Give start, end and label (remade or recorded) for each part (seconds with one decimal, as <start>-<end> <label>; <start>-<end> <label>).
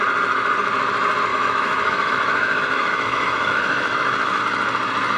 0.0-1.3 recorded; 1.3-4.4 remade; 4.4-5.2 recorded